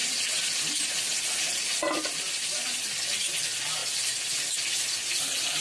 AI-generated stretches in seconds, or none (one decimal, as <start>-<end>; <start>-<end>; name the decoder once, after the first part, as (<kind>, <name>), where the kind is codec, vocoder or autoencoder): none